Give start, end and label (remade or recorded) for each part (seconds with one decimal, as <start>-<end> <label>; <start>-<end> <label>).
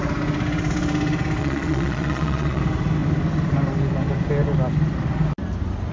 0.0-1.4 recorded; 1.4-2.6 remade; 2.6-5.9 recorded